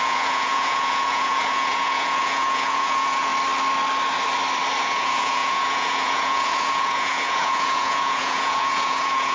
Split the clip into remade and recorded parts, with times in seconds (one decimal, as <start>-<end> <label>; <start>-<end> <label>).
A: 0.0-3.3 remade; 3.3-4.8 recorded; 4.8-9.3 remade